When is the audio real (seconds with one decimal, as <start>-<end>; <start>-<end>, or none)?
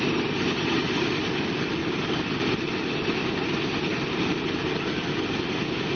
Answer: 0.0-6.0